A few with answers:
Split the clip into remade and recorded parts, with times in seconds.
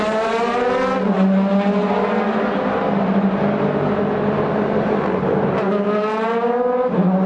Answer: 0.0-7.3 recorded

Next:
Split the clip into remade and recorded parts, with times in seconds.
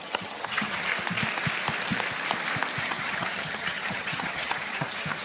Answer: 0.0-0.9 remade; 0.9-2.8 recorded; 2.8-5.2 remade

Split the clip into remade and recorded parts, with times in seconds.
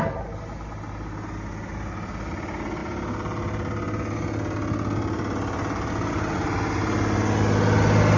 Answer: 0.0-8.2 recorded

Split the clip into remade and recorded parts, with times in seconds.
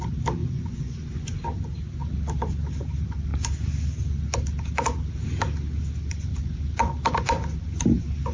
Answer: 0.0-0.4 recorded; 0.4-1.4 remade; 1.4-8.3 recorded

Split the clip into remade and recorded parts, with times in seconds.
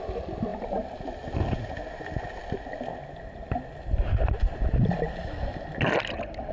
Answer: 0.0-6.5 recorded